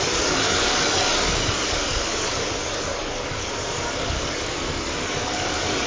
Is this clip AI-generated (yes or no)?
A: yes